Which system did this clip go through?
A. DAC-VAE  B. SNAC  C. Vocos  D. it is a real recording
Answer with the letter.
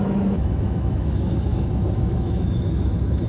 A